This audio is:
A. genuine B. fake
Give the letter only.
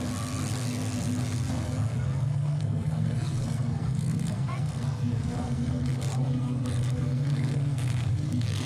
B